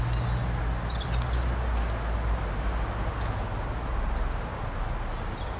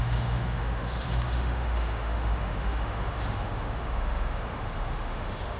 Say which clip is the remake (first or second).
second